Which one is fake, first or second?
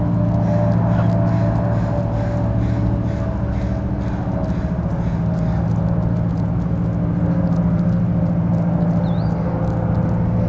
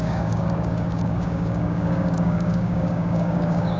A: second